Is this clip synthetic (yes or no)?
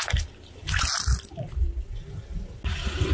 no